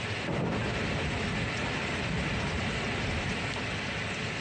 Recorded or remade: recorded